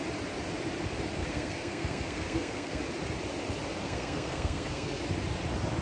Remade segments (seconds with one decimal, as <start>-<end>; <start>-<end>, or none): 1.2-2.8; 3.8-5.0